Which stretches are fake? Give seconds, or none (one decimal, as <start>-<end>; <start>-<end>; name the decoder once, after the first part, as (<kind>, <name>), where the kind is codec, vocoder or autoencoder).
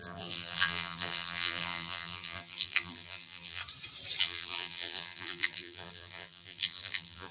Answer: 0.0-3.6 (vocoder, BigVGAN v2); 4.2-7.3